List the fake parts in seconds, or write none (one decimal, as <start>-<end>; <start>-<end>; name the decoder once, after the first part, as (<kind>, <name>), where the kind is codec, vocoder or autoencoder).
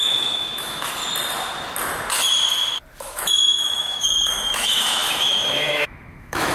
0.0-1.0 (autoencoder, DAC-VAE); 3.0-6.5